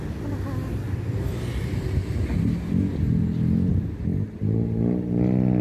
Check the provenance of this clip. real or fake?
real